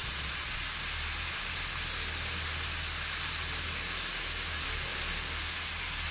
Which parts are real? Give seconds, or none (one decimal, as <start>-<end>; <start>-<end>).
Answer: 0.6-6.1